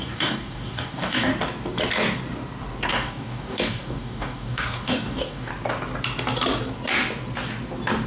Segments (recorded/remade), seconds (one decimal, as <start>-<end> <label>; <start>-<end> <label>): 0.0-1.3 remade; 1.3-2.9 recorded; 2.9-5.5 remade; 5.5-8.1 recorded